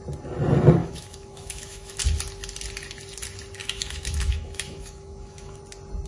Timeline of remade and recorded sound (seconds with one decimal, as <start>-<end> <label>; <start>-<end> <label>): 0.0-0.8 recorded; 0.8-2.0 remade; 2.0-3.6 recorded; 3.6-5.6 remade; 5.6-6.1 recorded